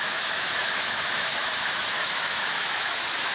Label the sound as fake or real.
fake